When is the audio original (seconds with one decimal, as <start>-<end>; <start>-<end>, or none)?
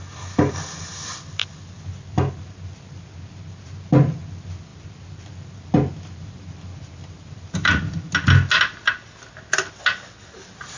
0.0-10.8